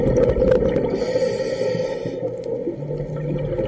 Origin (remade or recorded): recorded